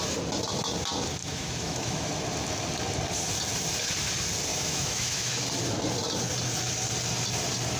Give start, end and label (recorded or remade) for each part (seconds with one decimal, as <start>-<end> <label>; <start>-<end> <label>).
0.0-1.2 recorded; 1.2-2.1 remade; 2.1-4.5 recorded; 4.5-5.4 remade; 5.4-7.8 recorded

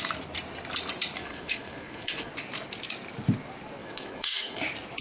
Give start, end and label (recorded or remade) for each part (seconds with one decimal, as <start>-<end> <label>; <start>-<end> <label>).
0.0-1.2 recorded; 1.2-2.3 remade; 2.3-3.8 recorded; 3.8-4.6 remade; 4.6-5.0 recorded

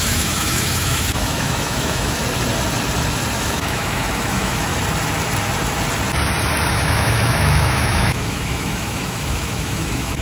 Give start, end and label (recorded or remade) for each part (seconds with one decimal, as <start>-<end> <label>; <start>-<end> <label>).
0.0-2.2 remade; 2.2-3.4 recorded; 3.4-4.7 remade; 4.7-6.7 recorded; 6.7-10.2 remade

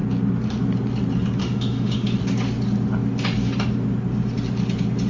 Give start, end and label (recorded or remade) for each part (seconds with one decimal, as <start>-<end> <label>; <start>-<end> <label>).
0.0-1.4 recorded; 1.4-2.2 remade; 2.2-5.1 recorded